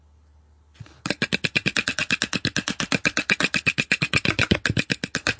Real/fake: real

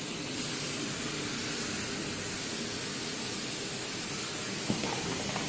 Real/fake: real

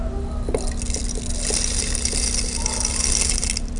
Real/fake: real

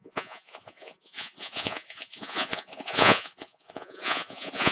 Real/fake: fake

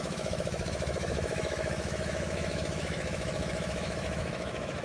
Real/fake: fake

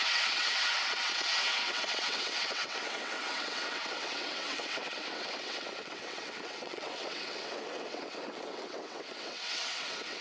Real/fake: fake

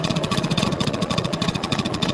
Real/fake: fake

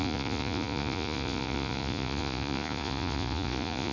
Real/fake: fake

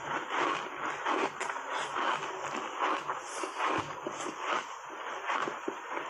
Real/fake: real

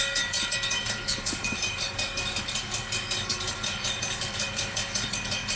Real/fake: fake